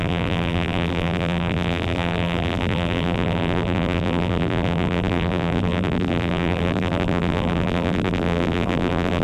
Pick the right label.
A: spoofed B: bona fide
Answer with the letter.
A